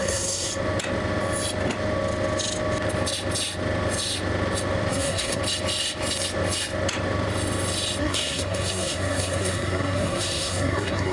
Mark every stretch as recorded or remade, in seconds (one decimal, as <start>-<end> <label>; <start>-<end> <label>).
0.0-0.5 remade; 0.5-4.9 recorded; 4.9-5.4 remade; 5.4-8.0 recorded; 8.0-11.1 remade